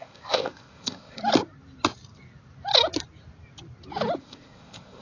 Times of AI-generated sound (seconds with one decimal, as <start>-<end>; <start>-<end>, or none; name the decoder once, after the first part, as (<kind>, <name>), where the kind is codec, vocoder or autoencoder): 0.0-1.2 (codec, ZipCodec); 4.2-5.0